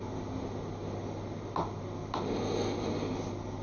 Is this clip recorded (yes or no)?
yes